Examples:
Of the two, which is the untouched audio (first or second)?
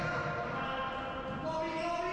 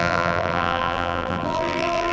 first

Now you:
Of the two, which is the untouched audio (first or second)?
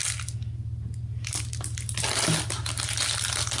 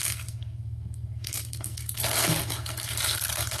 first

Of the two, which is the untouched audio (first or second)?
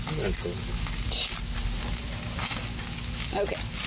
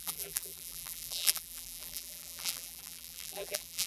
first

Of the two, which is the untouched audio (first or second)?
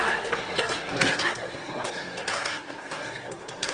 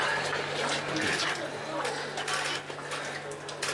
second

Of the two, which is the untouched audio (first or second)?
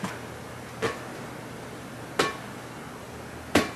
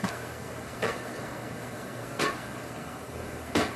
first